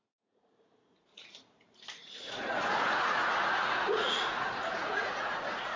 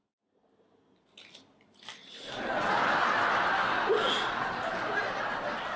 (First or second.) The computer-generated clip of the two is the first